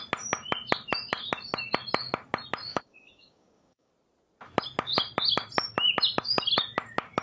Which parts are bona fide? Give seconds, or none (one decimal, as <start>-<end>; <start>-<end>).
0.0-2.7; 3.9-7.2